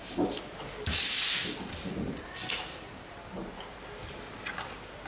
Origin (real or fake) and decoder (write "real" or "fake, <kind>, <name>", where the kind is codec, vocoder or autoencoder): real